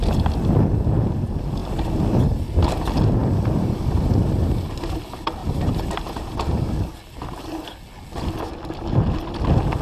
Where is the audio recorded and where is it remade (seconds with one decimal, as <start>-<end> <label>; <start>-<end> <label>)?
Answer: 0.0-3.2 recorded; 3.2-4.0 remade; 4.0-5.4 recorded; 5.4-7.8 remade; 7.8-9.8 recorded